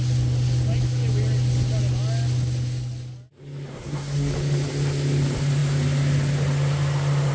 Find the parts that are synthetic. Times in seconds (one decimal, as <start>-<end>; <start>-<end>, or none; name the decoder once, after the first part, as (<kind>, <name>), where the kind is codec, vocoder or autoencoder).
3.7-4.3 (codec, SNAC)